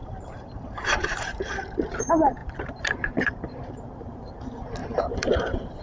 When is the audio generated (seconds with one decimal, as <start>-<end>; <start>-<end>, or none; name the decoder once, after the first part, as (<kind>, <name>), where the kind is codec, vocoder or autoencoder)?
0.0-1.5 (vocoder, BigVGAN v2); 2.4-3.8; 4.8-5.8